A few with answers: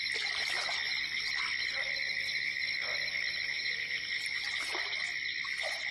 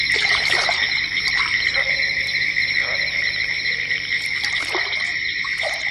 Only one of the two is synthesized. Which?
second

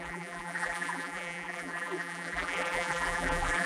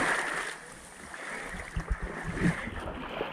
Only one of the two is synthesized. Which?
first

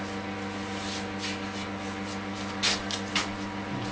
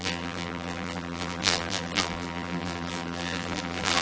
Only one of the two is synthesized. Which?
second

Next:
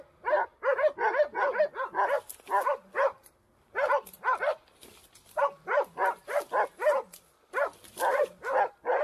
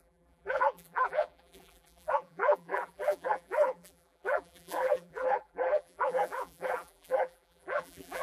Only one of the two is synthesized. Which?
second